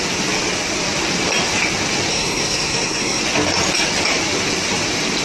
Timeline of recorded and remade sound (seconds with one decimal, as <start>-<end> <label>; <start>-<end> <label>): 0.0-2.1 recorded; 2.1-3.2 remade; 3.2-5.2 recorded